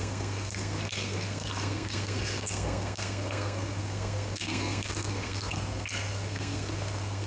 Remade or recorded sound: remade